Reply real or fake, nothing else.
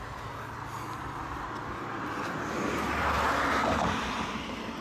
real